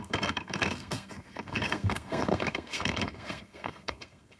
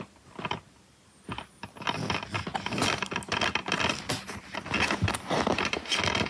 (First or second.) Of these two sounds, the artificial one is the first